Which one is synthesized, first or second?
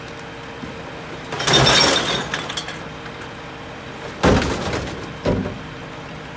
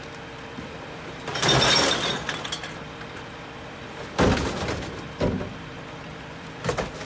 second